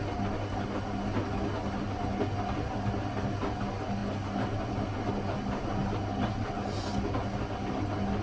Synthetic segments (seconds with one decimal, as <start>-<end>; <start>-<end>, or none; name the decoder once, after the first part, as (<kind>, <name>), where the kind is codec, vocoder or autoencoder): none